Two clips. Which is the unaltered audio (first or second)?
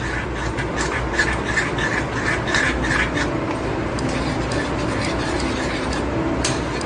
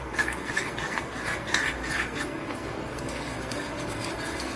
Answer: first